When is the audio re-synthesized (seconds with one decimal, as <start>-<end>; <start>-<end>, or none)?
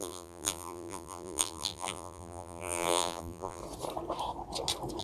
0.0-3.6